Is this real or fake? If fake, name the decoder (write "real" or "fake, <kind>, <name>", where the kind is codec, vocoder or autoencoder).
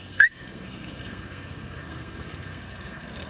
fake, codec, SNAC